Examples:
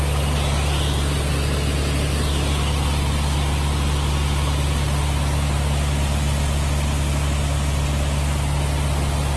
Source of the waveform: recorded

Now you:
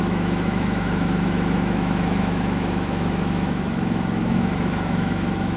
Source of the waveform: remade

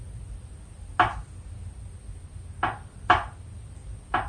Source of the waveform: recorded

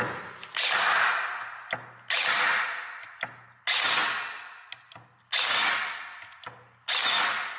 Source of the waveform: recorded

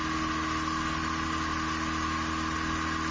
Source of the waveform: recorded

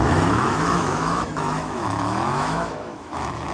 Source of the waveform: remade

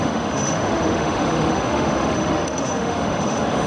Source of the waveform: remade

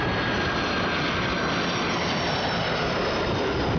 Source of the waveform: recorded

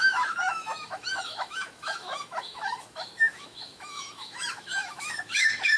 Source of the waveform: remade